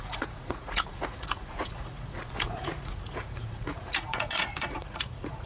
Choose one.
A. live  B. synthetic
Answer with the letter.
B